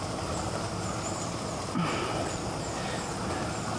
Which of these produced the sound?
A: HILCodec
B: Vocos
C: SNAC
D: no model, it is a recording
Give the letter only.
D